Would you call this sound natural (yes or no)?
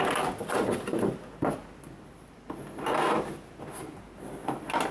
yes